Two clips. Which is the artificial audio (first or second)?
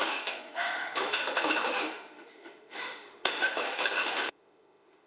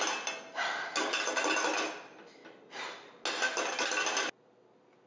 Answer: first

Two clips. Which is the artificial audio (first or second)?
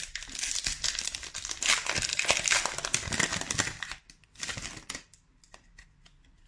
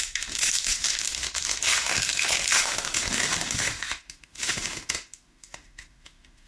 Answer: second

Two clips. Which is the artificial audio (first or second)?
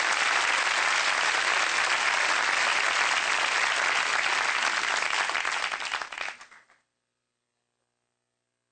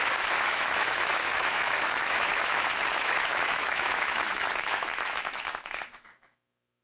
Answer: second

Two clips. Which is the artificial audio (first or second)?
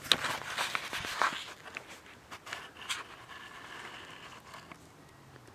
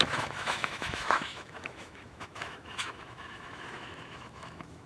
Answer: second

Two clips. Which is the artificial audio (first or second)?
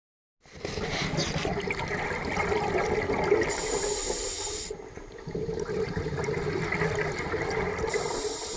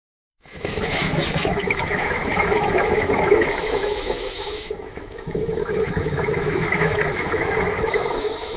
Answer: second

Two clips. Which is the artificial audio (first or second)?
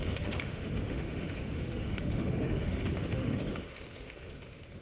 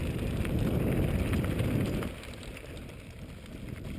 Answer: first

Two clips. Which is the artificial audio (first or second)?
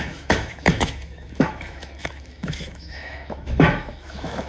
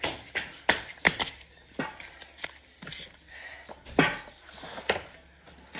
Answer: first